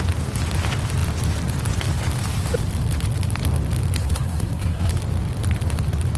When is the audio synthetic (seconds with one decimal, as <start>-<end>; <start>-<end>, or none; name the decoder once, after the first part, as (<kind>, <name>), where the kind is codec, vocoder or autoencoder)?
4.0-4.9 (codec, SNAC)